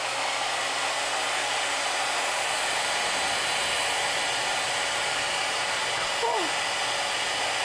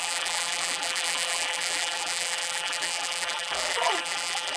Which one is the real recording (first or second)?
first